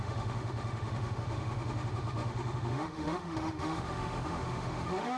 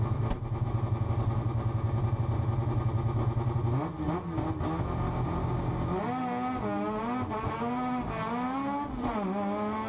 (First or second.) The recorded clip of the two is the second